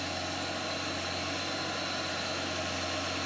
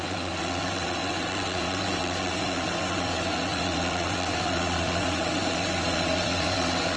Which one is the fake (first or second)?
second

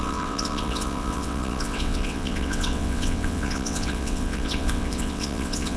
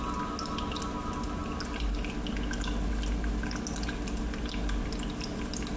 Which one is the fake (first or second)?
first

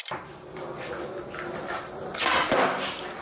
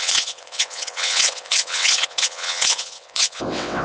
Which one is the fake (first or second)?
second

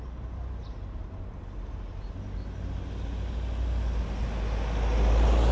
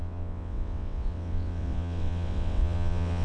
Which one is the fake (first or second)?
second